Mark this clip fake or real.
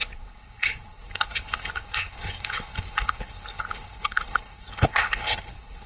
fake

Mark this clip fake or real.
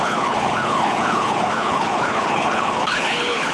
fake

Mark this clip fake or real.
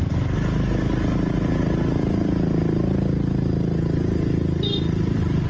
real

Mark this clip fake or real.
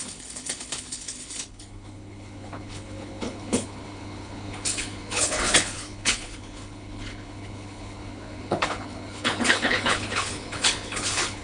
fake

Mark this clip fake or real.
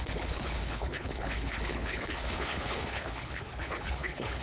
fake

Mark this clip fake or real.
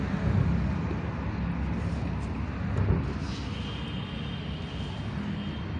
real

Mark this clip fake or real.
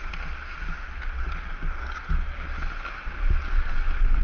real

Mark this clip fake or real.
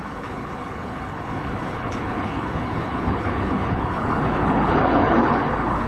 fake